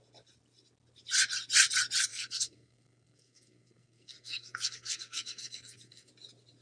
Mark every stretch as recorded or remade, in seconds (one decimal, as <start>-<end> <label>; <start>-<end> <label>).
0.0-2.1 recorded; 2.1-6.1 remade; 6.1-6.6 recorded